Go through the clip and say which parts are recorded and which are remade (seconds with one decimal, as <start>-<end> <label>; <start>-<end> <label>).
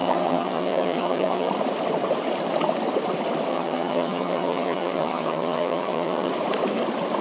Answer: 0.0-1.5 remade; 1.5-3.5 recorded; 3.5-6.3 remade; 6.3-7.2 recorded